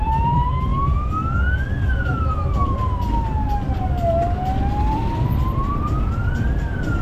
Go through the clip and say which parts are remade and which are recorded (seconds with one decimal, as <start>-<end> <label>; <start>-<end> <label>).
0.0-0.7 remade; 0.7-4.9 recorded; 4.9-7.0 remade